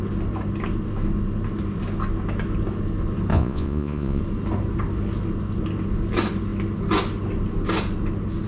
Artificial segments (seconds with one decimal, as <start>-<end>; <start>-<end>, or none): 3.3-4.2